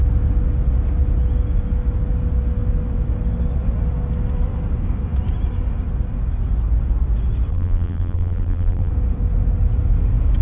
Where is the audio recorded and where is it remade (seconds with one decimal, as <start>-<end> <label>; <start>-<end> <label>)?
0.0-7.5 recorded; 7.5-8.9 remade; 8.9-10.4 recorded